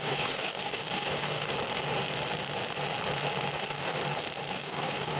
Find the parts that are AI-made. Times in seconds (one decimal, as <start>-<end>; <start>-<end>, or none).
0.0-1.5; 3.6-4.0; 4.5-5.2